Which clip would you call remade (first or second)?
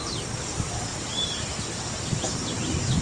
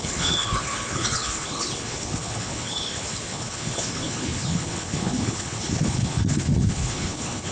second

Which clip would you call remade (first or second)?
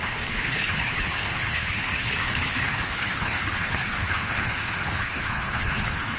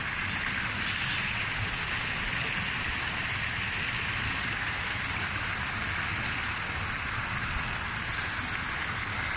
first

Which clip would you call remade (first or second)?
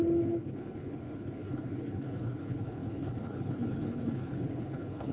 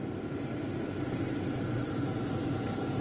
first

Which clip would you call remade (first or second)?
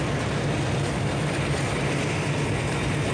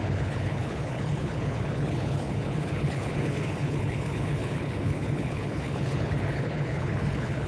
second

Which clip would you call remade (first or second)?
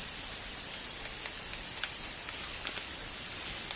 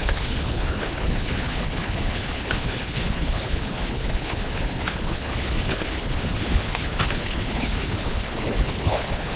second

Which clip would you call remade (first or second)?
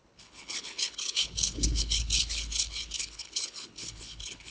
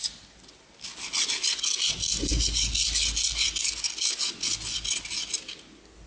first